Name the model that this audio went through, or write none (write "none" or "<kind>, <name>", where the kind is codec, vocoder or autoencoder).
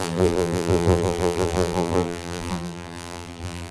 vocoder, BigVGAN v2